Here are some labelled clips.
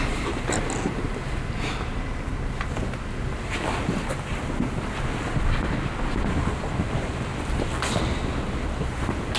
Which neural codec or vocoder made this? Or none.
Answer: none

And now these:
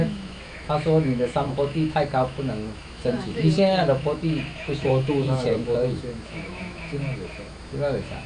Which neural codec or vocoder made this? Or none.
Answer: autoencoder, DAC-VAE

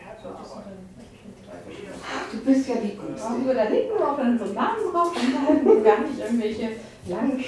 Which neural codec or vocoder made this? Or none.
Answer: none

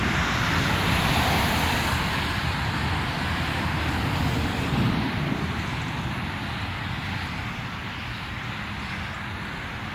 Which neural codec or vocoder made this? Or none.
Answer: none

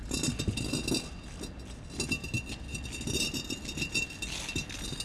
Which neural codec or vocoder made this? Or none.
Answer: none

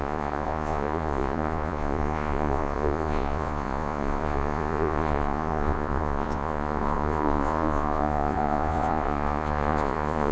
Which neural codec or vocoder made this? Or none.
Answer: vocoder, Vocos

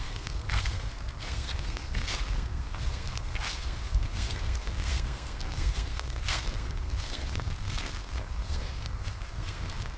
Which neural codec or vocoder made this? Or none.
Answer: codec, SNAC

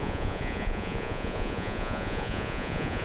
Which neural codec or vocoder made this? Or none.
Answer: vocoder, Vocos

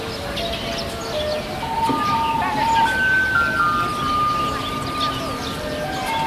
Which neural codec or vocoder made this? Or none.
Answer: none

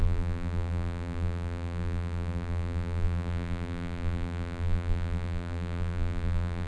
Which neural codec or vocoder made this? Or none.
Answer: vocoder, BigVGAN v2